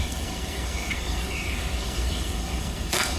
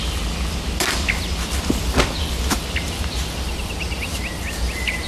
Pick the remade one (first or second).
first